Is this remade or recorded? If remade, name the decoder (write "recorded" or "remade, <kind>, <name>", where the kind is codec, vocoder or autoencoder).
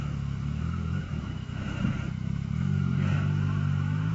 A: remade, autoencoder, DAC-VAE